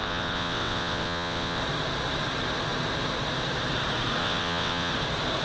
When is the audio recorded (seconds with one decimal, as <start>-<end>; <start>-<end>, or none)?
1.6-4.2; 4.9-5.4